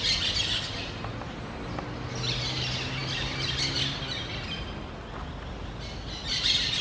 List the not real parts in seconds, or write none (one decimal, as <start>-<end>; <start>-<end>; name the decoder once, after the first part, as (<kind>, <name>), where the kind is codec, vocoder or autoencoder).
none